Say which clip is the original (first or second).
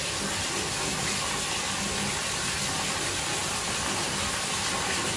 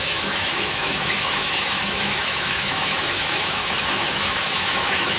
first